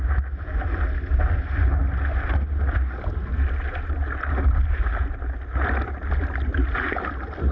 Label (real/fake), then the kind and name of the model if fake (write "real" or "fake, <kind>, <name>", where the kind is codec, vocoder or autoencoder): real